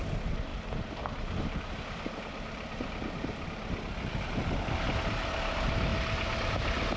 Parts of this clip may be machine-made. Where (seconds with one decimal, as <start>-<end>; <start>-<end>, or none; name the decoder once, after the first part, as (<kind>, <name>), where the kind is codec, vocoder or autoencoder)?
none